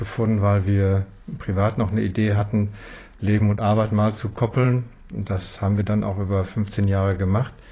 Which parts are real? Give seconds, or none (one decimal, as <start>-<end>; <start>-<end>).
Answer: 0.0-3.2; 6.7-7.7